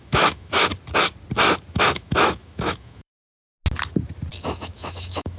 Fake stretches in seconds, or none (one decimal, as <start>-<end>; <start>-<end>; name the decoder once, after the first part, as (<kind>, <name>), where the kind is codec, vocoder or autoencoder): 0.0-0.7 (autoencoder, DAC-VAE); 1.7-3.1; 4.3-5.4

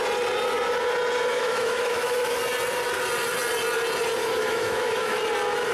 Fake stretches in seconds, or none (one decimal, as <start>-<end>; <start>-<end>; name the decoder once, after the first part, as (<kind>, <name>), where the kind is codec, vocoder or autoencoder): 1.3-2.4 (autoencoder, DAC-VAE); 4.2-5.2

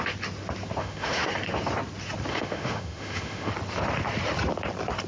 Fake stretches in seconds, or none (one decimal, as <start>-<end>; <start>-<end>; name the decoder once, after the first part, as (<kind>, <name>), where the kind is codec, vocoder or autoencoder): 0.8-1.3 (autoencoder, DAC-VAE); 2.3-3.5

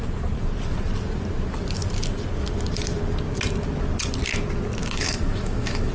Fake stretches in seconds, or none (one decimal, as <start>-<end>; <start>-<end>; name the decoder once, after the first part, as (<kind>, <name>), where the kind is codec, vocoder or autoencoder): 4.8-5.9 (autoencoder, DAC-VAE)

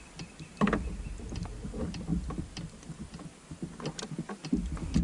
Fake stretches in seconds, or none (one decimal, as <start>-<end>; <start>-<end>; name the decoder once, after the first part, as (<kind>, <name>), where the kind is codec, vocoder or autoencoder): none

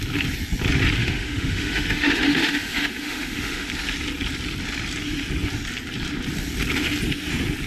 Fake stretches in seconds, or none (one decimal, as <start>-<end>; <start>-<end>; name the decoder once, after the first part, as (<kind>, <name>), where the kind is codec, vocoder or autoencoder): 1.0-3.7 (autoencoder, DAC-VAE)

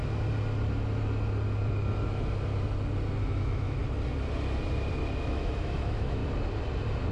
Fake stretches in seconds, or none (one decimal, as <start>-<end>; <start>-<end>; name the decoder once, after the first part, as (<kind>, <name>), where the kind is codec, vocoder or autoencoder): 3.2-3.8 (autoencoder, DAC-VAE); 5.2-6.2

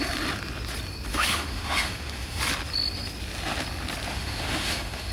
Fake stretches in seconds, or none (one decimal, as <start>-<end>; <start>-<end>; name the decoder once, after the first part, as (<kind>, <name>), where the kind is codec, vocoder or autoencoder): 1.1-2.4 (autoencoder, DAC-VAE); 4.1-5.1